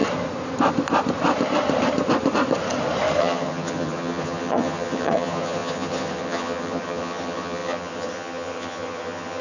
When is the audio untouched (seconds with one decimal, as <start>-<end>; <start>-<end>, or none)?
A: 0.0-3.2